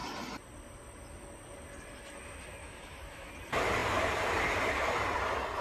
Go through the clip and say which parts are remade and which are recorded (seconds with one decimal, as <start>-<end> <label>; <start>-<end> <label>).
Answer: 0.0-2.6 recorded; 2.6-3.3 remade; 3.3-5.6 recorded